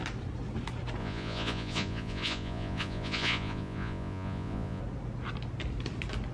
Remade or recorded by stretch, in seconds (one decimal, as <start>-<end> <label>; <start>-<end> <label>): 0.0-1.0 recorded; 1.0-4.8 remade; 4.8-6.3 recorded